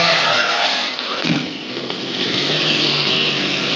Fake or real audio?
fake